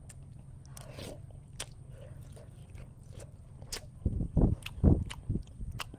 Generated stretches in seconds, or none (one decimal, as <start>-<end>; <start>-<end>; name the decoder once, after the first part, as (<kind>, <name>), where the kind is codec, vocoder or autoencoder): 0.7-2.2 (vocoder, BigVGAN v2); 2.6-5.6